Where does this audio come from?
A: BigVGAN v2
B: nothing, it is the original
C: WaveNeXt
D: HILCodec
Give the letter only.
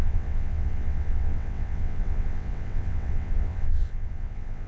C